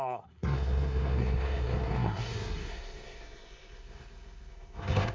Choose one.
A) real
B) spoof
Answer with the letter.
B